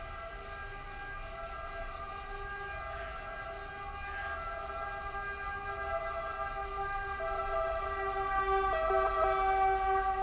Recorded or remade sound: recorded